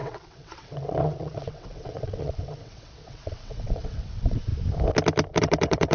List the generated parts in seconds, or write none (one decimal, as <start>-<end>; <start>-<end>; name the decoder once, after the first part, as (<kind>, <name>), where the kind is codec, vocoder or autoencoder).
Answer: 0.0-4.5 (vocoder, WaveNeXt); 5.4-5.9

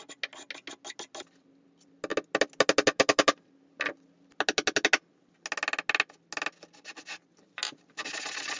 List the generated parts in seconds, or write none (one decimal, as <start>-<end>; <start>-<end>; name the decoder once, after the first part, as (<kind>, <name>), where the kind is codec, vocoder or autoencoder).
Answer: none

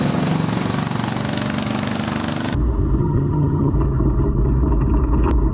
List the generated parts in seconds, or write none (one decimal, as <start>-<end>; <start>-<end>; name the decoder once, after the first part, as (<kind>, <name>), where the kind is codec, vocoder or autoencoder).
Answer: 3.0-3.7 (vocoder, HiFi-GAN)

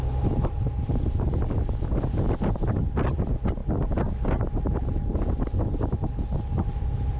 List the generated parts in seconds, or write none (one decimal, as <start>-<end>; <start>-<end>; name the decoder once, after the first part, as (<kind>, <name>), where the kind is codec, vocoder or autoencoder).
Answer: none